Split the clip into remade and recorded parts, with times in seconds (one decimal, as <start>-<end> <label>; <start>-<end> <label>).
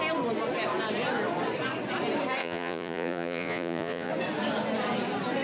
0.0-2.4 recorded; 2.4-4.1 remade; 4.1-5.4 recorded